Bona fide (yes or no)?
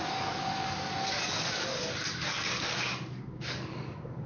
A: no